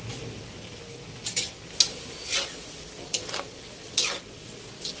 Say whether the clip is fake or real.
real